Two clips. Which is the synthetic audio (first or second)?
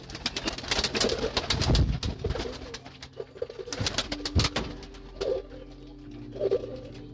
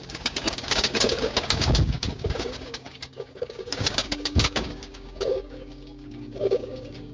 second